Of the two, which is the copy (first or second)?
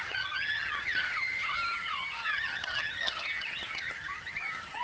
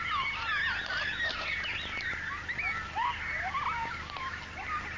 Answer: first